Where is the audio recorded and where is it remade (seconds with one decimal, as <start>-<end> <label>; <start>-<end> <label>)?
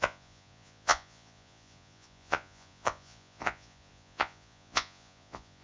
0.0-5.6 remade